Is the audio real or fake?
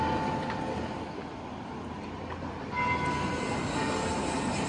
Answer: real